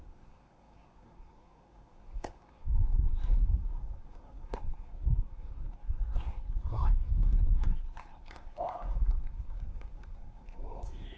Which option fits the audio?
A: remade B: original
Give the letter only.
A